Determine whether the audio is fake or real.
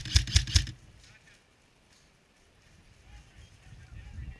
real